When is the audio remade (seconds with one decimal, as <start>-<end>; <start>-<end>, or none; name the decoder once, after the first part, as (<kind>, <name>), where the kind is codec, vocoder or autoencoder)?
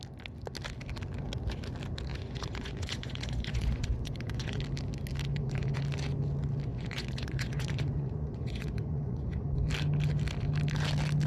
2.1-4.6 (vocoder, Vocos); 5.3-5.8; 6.7-9.7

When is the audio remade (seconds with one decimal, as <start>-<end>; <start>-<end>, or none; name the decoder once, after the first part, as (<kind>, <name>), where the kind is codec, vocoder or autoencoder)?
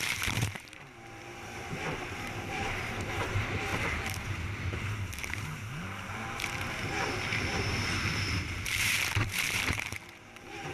0.0-3.7 (vocoder, BigVGAN v2); 5.1-7.3; 8.4-10.7